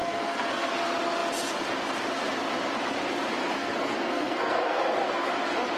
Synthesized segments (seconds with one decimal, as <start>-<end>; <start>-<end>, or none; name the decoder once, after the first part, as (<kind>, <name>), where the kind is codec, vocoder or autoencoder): 0.0-0.7 (codec, SNAC); 3.4-5.3